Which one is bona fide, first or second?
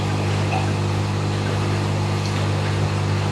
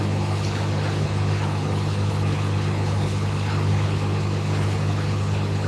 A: first